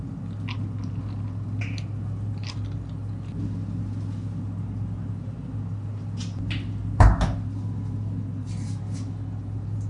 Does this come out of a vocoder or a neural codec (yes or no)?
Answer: no